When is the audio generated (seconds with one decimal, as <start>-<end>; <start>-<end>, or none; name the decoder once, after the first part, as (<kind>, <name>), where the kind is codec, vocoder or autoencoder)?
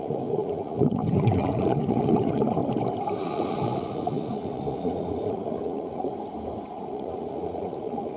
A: 0.0-2.6 (vocoder, Vocos); 3.2-6.1; 6.7-8.2